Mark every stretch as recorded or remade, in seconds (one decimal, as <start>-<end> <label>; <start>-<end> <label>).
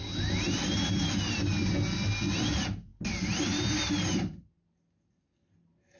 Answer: 0.0-6.0 recorded